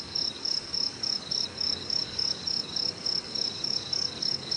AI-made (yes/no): yes